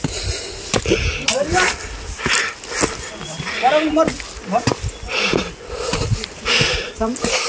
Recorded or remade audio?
recorded